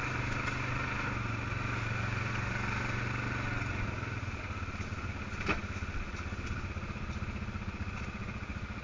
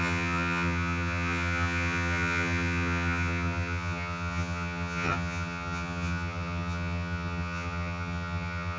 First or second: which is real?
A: first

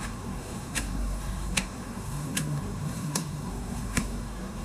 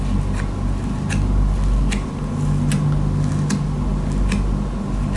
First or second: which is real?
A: second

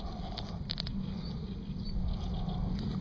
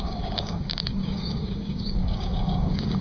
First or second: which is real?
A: first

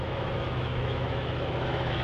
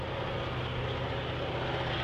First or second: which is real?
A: second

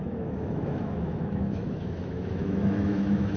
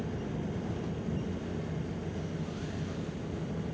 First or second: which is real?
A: second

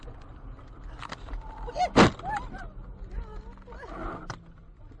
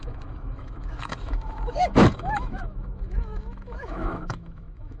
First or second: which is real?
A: first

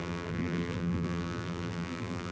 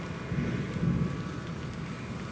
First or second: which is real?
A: second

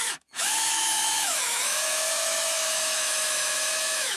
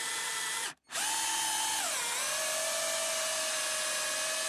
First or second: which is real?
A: second